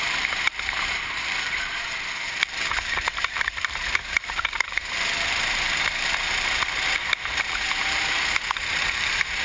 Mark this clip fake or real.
fake